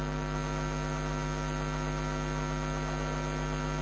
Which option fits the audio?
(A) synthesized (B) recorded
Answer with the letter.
B